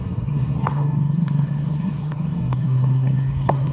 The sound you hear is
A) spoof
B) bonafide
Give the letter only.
A